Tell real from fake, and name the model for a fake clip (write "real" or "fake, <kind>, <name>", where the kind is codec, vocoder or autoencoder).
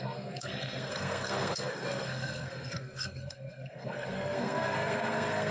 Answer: fake, codec, SNAC